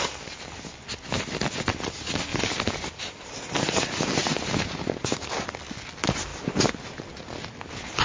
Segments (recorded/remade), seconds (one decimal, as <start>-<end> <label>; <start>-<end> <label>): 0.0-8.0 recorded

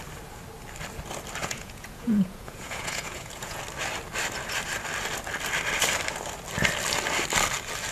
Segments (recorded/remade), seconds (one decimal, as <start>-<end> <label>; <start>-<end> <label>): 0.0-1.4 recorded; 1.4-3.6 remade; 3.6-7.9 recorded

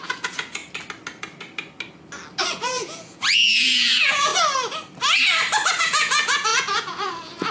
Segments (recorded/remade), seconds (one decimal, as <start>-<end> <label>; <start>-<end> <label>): 0.0-0.6 remade; 0.6-2.5 recorded; 2.5-4.3 remade; 4.3-5.8 recorded; 5.8-7.5 remade